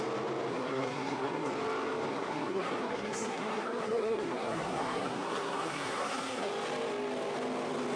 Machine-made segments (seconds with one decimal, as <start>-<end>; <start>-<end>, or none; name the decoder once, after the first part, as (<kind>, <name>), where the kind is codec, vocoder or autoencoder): 0.5-1.5 (codec, SNAC); 2.1-6.5